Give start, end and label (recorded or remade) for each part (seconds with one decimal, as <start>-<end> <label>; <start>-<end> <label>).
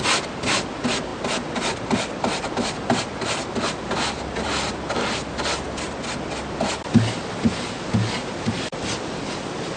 0.0-9.8 recorded